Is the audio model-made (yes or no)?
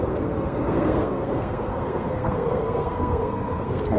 yes